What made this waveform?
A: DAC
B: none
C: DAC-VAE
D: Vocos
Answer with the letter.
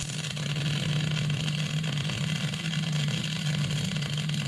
B